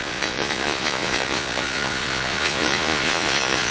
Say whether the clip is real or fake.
fake